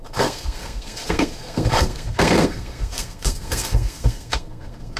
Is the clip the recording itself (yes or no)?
no